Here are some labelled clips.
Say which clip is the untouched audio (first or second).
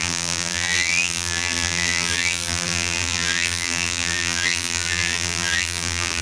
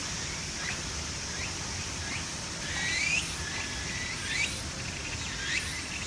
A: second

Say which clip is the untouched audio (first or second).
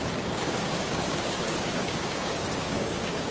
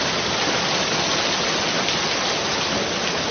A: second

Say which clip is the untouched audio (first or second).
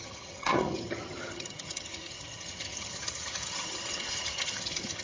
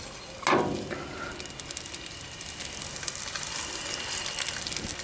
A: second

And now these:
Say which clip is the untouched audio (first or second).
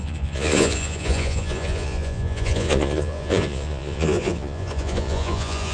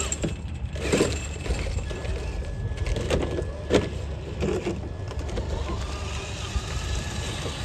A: second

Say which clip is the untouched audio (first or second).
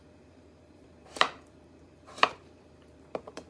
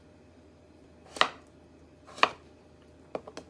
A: second